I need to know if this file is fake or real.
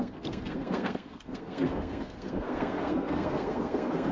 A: fake